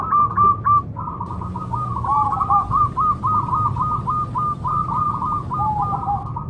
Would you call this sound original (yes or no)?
yes